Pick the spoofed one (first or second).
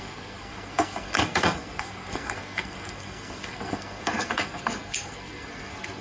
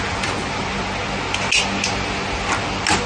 first